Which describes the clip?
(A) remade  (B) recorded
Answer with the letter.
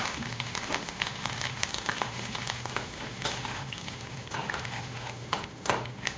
A